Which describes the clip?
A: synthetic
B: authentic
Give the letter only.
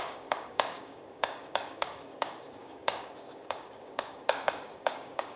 A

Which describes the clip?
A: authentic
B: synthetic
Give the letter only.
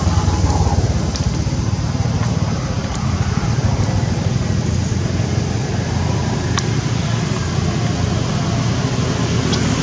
A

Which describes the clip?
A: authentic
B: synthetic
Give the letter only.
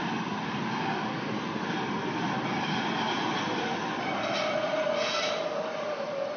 A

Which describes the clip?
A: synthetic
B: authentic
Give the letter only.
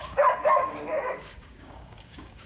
A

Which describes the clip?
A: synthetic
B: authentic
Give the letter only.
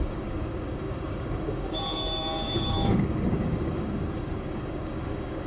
A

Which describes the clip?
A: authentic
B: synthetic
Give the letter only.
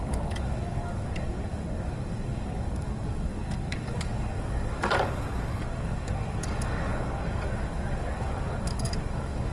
B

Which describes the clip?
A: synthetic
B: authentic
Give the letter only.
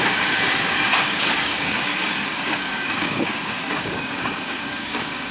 A